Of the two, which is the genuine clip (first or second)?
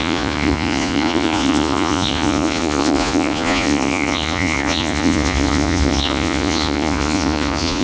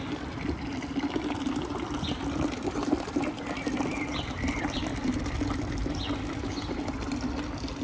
second